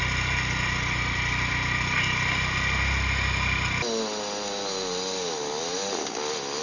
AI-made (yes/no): no